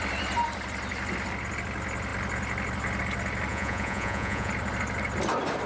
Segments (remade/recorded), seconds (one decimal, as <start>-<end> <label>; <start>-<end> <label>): 0.0-3.5 recorded; 3.5-4.5 remade; 4.5-5.7 recorded